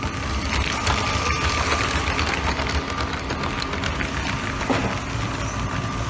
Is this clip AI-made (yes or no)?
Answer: no